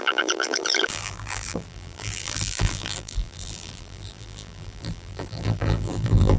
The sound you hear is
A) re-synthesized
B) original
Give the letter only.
A